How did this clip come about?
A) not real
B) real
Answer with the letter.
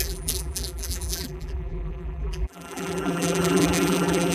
A